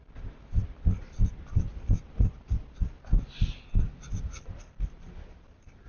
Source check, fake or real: real